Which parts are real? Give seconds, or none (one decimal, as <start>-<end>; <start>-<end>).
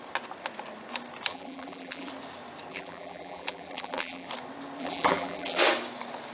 0.0-1.3; 2.1-2.7; 4.3-4.8; 5.6-6.3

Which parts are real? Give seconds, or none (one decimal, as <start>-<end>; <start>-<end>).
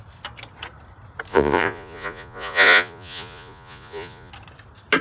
0.0-1.3; 4.3-5.0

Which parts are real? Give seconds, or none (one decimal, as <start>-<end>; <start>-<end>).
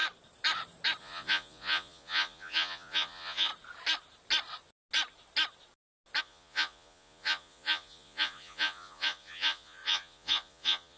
0.0-1.0; 3.5-6.2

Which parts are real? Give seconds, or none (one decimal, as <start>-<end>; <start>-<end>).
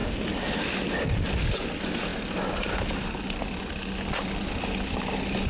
0.0-5.5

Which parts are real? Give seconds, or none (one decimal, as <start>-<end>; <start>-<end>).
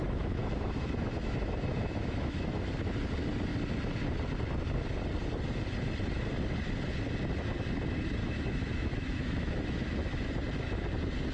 2.7-8.2; 10.3-11.3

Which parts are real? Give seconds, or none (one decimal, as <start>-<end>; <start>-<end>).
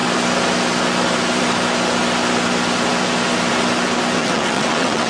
0.0-4.2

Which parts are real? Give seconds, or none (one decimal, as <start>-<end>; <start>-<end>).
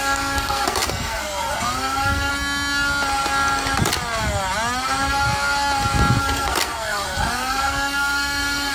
2.3-6.2